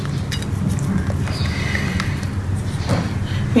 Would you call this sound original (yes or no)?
yes